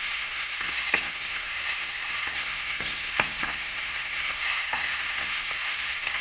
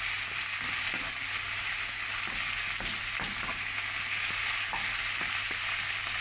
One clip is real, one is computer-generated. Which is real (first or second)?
second